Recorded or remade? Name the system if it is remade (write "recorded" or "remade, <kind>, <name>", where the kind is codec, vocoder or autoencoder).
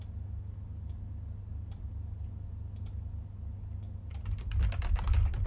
recorded